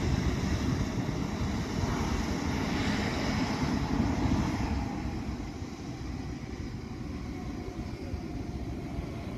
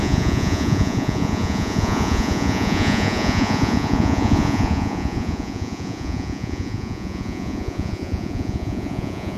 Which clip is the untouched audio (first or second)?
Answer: first